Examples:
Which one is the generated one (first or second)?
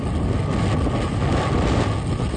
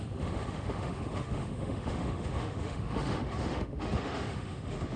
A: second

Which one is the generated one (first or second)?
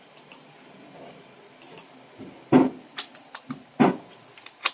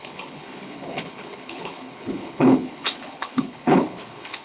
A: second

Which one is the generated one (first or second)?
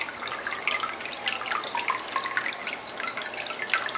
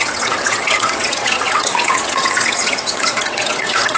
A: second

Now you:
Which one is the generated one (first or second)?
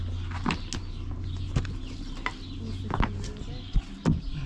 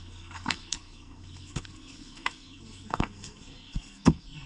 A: second